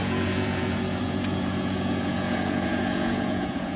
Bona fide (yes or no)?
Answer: no